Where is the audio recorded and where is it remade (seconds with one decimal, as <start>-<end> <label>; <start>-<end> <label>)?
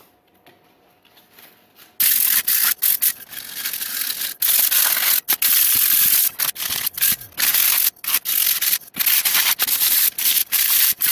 0.0-10.4 recorded; 10.4-11.1 remade